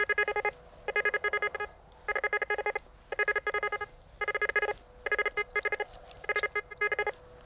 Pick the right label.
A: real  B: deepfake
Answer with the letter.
A